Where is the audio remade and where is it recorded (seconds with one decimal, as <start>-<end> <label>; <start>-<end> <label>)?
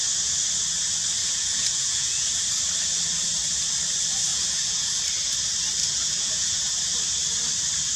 0.0-1.2 recorded; 1.2-2.5 remade; 2.5-4.3 recorded; 4.3-5.0 remade; 5.0-5.8 recorded; 5.8-6.7 remade; 6.7-8.0 recorded